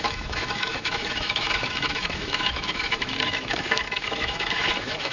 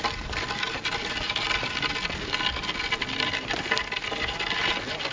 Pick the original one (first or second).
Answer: second